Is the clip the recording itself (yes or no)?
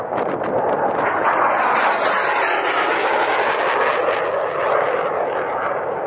yes